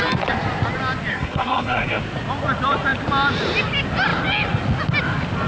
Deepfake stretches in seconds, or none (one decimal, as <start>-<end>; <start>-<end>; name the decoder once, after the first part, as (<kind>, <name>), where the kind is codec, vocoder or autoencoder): 1.1-2.0 (codec, SNAC)